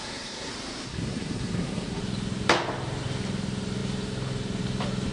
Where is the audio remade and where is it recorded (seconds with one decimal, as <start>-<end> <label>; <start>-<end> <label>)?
0.0-0.5 remade; 0.5-0.9 recorded; 0.9-2.0 remade; 2.0-5.1 recorded